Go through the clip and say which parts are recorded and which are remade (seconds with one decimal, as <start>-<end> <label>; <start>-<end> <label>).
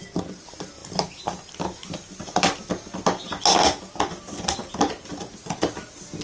0.0-6.2 recorded